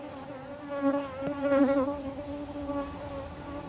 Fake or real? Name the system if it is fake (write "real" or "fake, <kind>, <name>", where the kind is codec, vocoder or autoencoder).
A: real